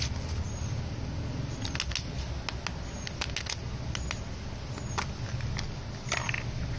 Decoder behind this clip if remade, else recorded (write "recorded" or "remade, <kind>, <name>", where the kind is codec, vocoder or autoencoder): recorded